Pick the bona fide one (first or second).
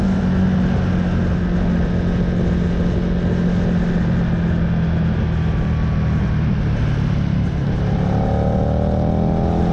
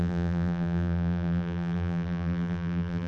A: first